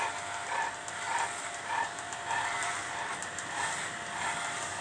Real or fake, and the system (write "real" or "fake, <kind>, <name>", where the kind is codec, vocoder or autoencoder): real